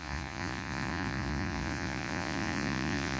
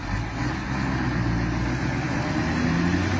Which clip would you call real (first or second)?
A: second